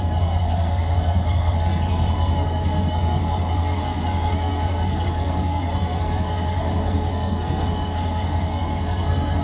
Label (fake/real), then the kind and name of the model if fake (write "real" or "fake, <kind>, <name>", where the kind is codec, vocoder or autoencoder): fake, codec, SNAC